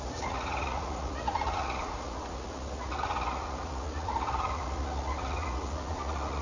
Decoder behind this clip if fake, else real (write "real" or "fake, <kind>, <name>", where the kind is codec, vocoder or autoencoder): fake, vocoder, Vocos